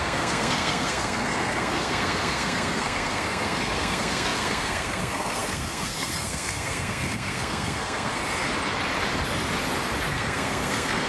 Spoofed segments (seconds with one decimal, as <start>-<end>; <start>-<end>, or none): 0.0-8.2; 10.1-11.1